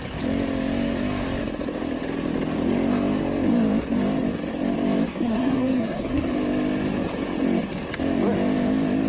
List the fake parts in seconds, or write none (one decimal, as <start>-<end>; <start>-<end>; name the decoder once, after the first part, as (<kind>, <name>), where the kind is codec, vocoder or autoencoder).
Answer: 5.1-6.3 (codec, SNAC)